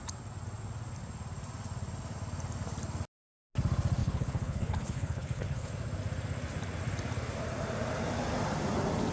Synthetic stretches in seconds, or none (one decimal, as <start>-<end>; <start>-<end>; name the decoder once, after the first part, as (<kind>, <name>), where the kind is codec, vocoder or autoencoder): 4.0-5.7 (codec, HILCodec)